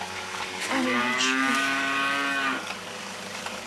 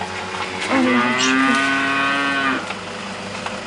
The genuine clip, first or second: second